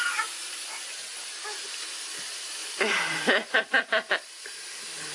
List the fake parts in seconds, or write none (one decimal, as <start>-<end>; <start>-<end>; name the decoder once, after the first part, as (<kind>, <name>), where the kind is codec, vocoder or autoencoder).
2.6-3.6 (vocoder, BigVGAN v2)